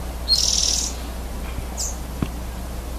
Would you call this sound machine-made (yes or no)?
no